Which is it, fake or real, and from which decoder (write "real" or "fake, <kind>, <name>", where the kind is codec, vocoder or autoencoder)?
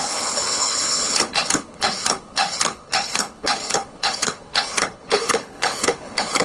fake, codec, HILCodec